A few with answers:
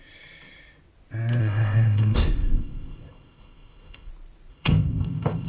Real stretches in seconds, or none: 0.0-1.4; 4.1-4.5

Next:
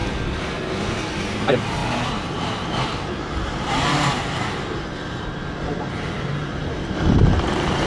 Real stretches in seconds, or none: 0.0-1.4; 1.8-3.2

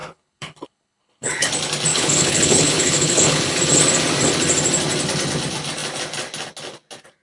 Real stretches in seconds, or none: 1.5-1.9; 3.6-7.2

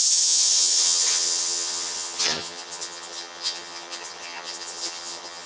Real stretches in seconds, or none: none

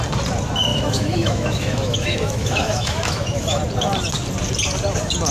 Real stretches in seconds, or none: 0.0-0.7; 3.6-5.3